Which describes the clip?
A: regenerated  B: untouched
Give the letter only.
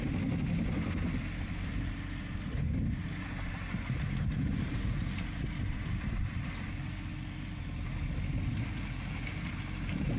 B